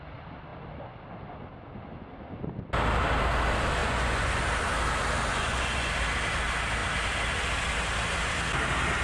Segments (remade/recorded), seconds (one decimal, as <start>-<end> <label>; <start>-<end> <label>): 0.0-3.8 recorded; 3.8-4.4 remade; 4.4-5.3 recorded; 5.3-5.9 remade; 5.9-9.0 recorded